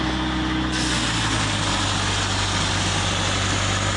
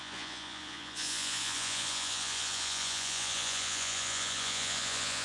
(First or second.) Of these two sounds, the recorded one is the first